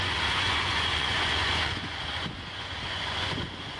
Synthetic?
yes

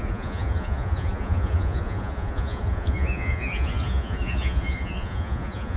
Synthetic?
yes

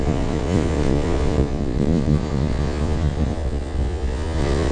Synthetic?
yes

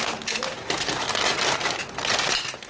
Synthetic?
no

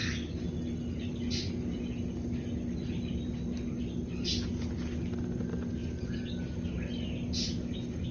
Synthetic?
no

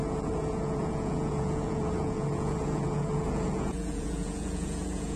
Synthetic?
yes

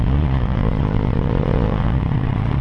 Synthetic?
yes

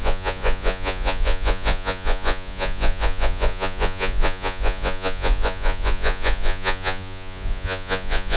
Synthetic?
yes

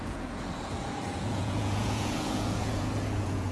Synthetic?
yes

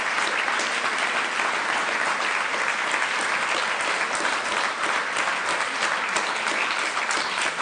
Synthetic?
no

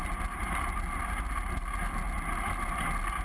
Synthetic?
no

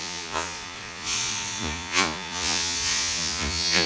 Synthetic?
yes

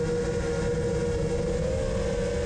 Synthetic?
no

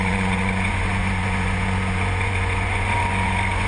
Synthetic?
yes